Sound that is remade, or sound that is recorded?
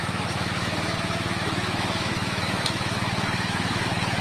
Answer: remade